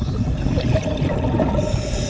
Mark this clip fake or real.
real